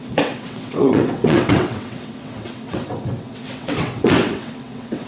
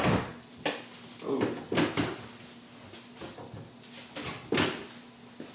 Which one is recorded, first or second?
second